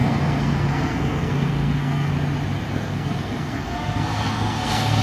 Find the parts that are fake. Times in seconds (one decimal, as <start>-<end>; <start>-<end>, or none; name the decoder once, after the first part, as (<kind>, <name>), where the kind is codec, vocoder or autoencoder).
0.0-2.1 (codec, SNAC); 2.7-5.0